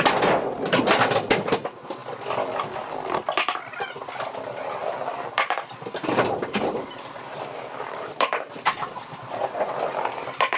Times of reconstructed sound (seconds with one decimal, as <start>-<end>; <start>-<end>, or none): 2.0-2.6; 6.4-9.0